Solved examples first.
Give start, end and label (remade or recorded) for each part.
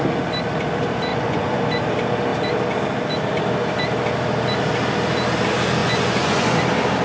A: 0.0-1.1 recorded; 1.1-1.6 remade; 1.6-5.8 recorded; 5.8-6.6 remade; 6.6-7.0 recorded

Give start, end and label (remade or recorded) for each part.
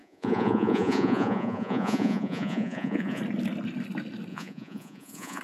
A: 0.0-3.2 remade; 3.2-4.3 recorded; 4.3-5.4 remade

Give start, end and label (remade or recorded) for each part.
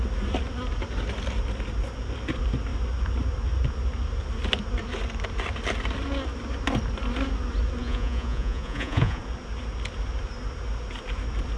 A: 0.0-7.8 recorded; 7.8-9.2 remade; 9.2-11.6 recorded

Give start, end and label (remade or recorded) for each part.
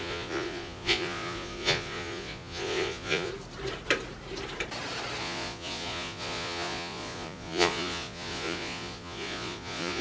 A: 0.0-3.3 remade; 3.3-5.2 recorded; 5.2-10.0 remade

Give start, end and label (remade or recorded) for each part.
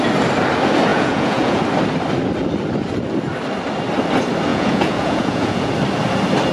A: 0.0-0.9 recorded; 0.9-1.6 remade; 1.6-4.5 recorded; 4.5-5.7 remade; 5.7-6.5 recorded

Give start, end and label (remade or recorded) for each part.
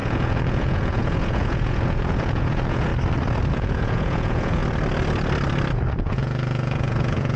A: 0.0-2.9 remade; 2.9-3.5 recorded; 3.5-4.6 remade; 4.6-6.0 recorded; 6.0-7.4 remade